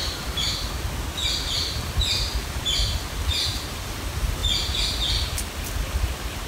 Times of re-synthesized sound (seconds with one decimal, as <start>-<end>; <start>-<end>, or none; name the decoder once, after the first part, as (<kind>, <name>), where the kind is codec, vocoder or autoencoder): 0.0-0.5 (vocoder, BigVGAN v2); 1.2-3.9